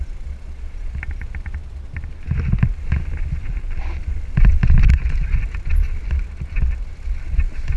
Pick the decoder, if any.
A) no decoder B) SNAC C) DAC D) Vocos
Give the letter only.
A